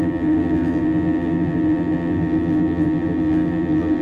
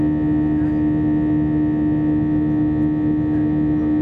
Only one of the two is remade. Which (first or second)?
first